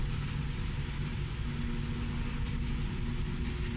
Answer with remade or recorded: recorded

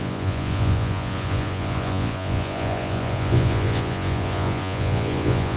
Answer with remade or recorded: remade